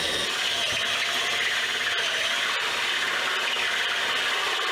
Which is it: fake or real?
real